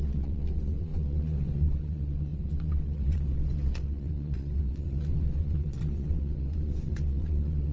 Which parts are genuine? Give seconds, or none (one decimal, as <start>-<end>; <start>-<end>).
none